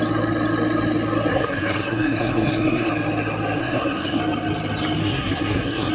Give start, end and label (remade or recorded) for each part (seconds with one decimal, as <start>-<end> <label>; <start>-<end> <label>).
0.0-1.3 recorded; 1.3-2.9 remade; 2.9-3.6 recorded; 3.6-4.2 remade; 4.2-5.0 recorded; 5.0-5.9 remade